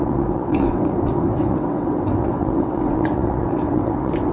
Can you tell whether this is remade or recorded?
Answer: remade